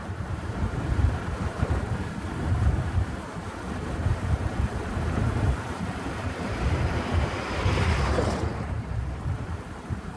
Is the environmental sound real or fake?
fake